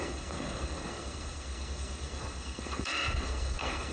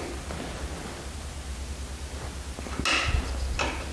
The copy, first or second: first